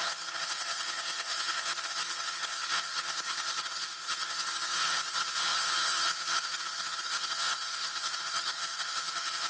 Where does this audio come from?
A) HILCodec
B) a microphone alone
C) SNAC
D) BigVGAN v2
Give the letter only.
A